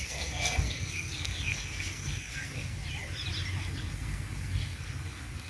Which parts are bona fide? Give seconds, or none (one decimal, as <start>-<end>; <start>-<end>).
2.8-3.6

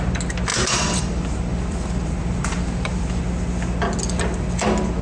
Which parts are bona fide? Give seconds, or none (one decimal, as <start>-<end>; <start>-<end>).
0.0-0.5; 3.2-5.0

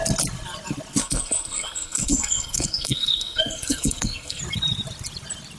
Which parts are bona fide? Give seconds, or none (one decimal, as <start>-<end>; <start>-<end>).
0.0-1.0; 4.4-5.6

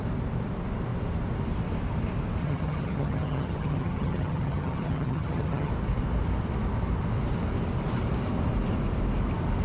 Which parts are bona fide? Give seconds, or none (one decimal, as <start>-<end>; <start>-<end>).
0.0-2.4; 5.7-9.6

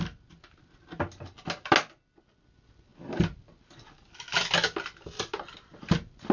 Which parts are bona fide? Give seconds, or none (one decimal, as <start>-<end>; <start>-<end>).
0.0-6.3

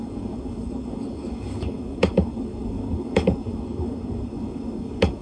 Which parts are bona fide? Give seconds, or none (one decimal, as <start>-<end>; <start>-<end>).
none

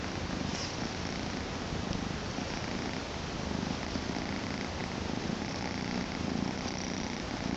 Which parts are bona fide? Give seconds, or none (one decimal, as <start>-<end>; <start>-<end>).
0.0-7.6